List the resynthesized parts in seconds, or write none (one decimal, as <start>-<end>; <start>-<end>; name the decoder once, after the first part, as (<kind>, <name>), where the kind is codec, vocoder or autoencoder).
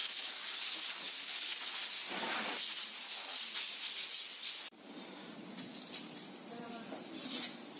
0.0-1.6 (codec, DAC)